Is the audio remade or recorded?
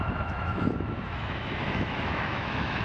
remade